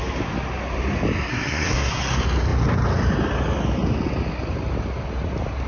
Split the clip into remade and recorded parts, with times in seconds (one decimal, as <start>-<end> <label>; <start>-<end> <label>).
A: 0.0-1.3 recorded; 1.3-2.0 remade; 2.0-5.7 recorded